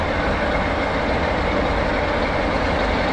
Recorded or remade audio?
recorded